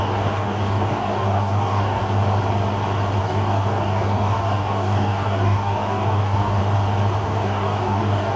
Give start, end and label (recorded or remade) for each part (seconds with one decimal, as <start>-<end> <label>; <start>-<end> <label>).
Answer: 0.0-2.0 remade; 2.0-3.2 recorded; 3.2-6.6 remade; 6.6-7.2 recorded; 7.2-8.4 remade